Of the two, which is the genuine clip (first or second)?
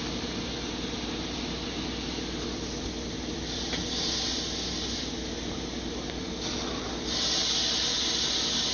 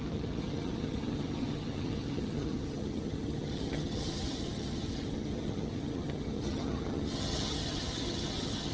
first